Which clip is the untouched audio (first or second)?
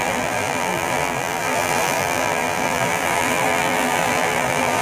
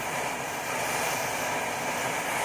second